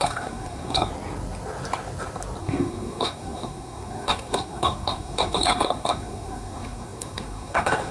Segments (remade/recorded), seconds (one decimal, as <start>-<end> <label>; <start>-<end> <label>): 0.0-0.9 remade; 0.9-2.4 recorded; 2.4-7.9 remade